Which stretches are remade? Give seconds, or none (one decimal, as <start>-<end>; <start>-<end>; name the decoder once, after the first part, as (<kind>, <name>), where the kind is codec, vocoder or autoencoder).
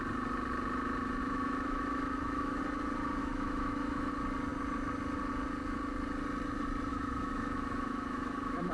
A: 1.2-2.6 (autoencoder, DAC-VAE); 3.2-4.1; 6.9-8.7